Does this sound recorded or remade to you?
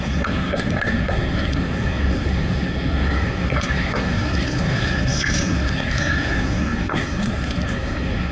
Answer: remade